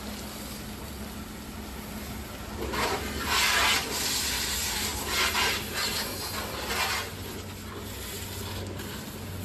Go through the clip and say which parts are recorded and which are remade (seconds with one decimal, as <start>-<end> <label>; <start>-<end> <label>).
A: 0.0-9.4 recorded